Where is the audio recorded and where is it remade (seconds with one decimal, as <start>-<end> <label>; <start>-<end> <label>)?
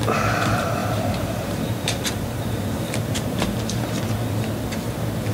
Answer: 0.0-0.8 recorded; 0.8-4.0 remade; 4.0-5.3 recorded